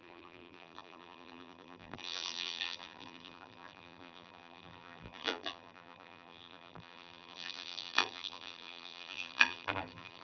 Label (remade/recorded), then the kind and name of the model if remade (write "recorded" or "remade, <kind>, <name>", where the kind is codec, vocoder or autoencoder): remade, vocoder, BigVGAN v2